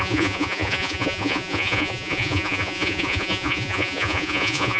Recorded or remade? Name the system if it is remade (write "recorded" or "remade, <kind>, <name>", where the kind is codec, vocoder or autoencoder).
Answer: remade, vocoder, Vocos